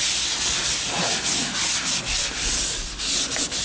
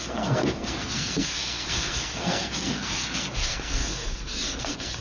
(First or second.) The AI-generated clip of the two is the second